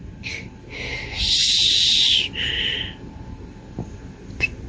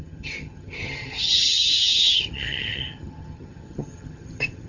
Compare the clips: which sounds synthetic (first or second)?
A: second